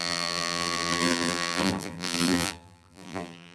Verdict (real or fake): fake